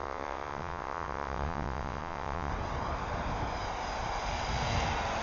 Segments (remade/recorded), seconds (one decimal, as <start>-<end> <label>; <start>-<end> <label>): 0.0-2.5 remade; 2.5-5.2 recorded